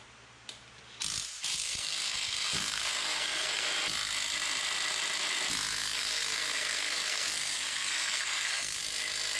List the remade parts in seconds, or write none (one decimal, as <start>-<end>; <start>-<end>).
1.5-3.7; 5.8-8.8